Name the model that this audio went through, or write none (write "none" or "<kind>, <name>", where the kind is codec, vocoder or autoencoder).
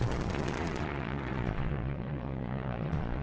vocoder, Vocos